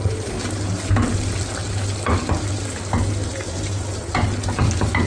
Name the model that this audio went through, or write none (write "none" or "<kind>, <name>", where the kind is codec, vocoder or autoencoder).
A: none